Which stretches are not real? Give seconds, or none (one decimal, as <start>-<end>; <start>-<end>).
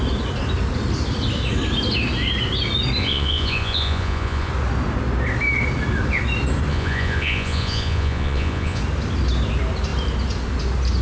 3.0-4.5; 6.7-8.8